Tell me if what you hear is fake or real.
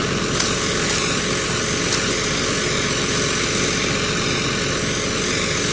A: real